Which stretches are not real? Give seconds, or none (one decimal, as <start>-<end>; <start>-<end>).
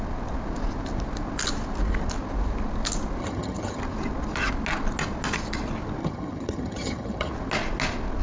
3.2-3.8; 6.0-7.3